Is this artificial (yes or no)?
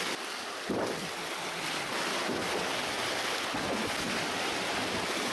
no